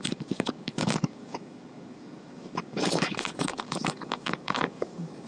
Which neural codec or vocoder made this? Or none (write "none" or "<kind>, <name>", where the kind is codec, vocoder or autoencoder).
codec, DAC